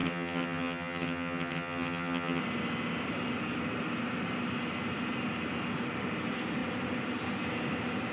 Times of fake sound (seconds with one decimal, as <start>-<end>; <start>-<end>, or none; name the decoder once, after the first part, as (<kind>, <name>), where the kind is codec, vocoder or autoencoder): 0.0-2.4 (vocoder, HiFi-GAN)